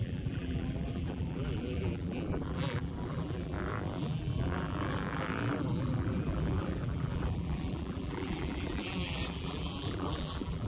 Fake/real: fake